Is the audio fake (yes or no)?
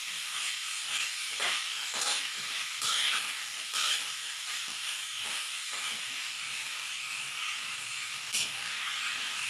yes